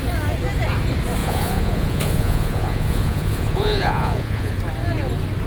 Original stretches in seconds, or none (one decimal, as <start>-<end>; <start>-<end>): 0.0-1.2; 4.5-5.5